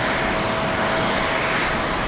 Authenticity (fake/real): real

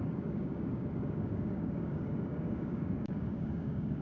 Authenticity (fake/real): fake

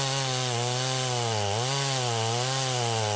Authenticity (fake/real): real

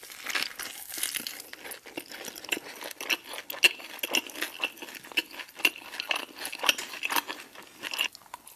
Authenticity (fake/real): real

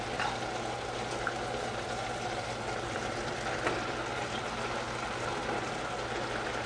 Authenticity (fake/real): real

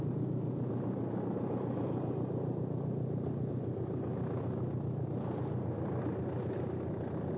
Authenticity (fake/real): real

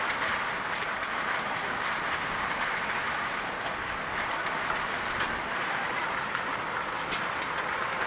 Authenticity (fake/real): real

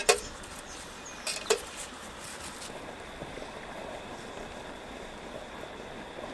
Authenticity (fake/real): real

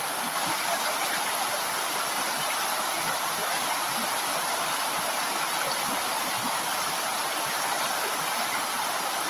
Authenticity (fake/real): real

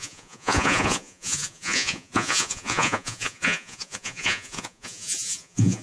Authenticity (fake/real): fake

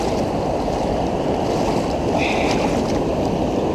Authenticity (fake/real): real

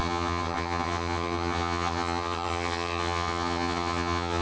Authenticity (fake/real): fake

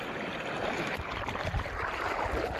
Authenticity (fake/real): real